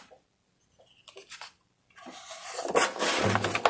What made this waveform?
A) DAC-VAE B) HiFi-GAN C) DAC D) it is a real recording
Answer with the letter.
D